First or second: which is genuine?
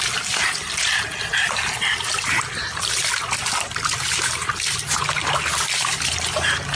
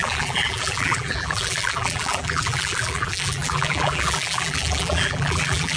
first